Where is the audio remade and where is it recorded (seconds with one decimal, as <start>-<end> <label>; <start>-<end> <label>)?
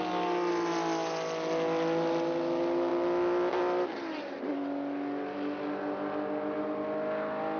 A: 0.0-7.6 recorded